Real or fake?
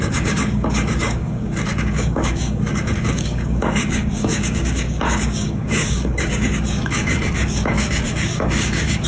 fake